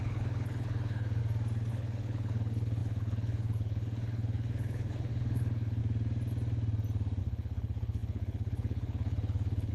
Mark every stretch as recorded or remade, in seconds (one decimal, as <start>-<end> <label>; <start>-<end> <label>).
0.0-1.2 remade; 1.2-1.7 recorded; 1.7-5.8 remade; 5.8-7.2 recorded; 7.2-9.7 remade